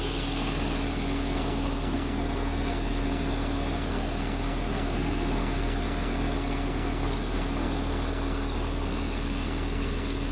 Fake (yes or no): yes